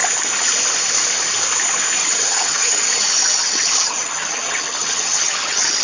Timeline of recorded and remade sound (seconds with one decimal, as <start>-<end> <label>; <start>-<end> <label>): 0.0-2.0 recorded; 2.0-5.8 remade